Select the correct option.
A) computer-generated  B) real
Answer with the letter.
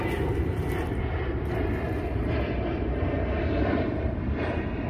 A